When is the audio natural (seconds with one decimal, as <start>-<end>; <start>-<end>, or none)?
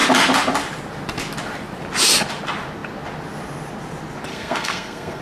0.0-4.3